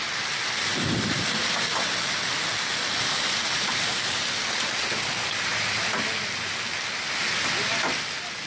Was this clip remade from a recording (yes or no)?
no